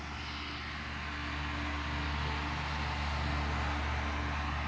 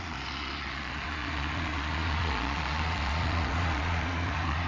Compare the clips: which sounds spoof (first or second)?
second